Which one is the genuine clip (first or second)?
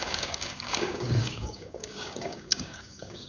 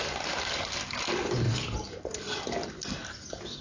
second